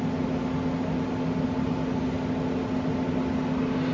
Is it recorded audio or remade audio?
recorded